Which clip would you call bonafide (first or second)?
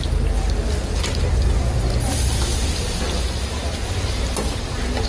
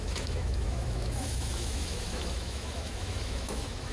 first